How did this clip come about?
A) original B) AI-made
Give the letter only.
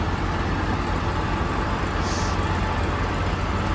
A